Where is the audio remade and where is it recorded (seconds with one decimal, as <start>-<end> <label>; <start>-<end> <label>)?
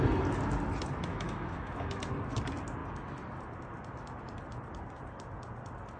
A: 0.0-1.1 recorded; 1.1-2.0 remade; 2.0-6.0 recorded